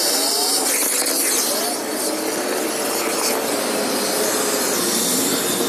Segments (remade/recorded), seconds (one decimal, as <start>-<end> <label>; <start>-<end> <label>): 0.0-0.6 remade; 0.6-5.7 recorded